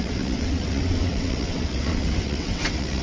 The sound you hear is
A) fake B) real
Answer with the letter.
A